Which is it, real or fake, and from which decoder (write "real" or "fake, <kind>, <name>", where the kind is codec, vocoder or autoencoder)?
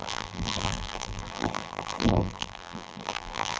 fake, vocoder, BigVGAN v2